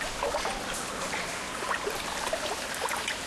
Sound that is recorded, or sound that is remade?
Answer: recorded